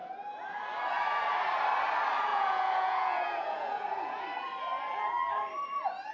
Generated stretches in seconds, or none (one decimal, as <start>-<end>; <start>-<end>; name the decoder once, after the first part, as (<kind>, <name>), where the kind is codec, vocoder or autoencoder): 2.3-4.2 (vocoder, Vocos)